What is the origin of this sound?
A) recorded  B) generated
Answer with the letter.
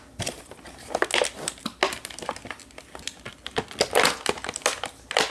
A